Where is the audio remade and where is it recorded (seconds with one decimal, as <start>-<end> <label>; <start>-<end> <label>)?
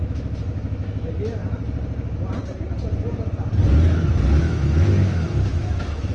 0.0-1.4 remade; 1.4-4.4 recorded; 4.4-6.1 remade